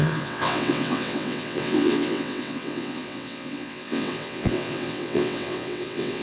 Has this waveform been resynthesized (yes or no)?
yes